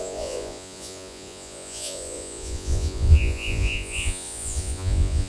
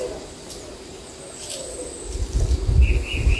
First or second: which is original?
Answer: second